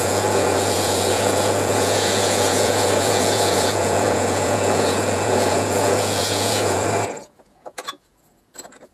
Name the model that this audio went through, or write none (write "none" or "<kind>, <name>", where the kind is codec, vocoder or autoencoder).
vocoder, Vocos